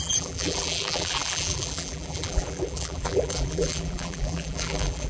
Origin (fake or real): fake